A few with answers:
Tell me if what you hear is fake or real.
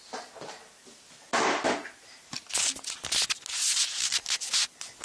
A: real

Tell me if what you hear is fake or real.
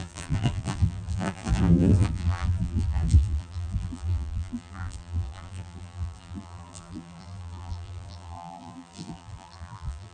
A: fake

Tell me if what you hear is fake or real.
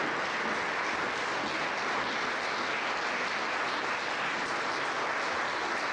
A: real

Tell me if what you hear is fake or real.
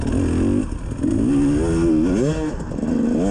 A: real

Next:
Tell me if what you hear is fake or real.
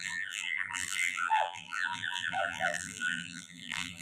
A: fake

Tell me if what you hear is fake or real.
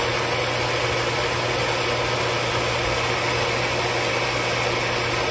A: real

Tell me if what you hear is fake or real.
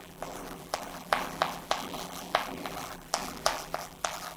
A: fake